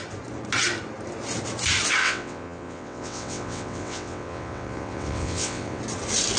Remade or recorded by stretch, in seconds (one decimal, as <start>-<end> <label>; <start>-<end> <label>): 0.0-2.0 recorded; 2.0-5.8 remade; 5.8-6.4 recorded

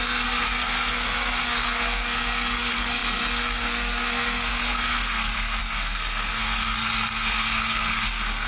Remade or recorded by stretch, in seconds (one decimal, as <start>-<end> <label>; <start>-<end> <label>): 0.0-8.5 remade